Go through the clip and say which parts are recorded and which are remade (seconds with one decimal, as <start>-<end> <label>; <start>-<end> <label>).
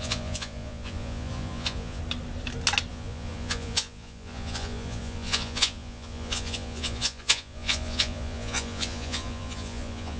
0.0-2.0 remade; 2.0-2.9 recorded; 2.9-10.2 remade